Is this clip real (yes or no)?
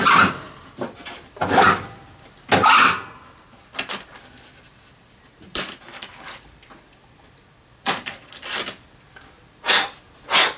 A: yes